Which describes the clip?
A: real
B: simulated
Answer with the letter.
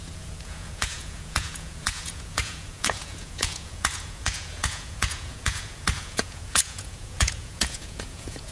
B